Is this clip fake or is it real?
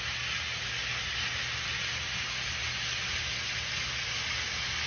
real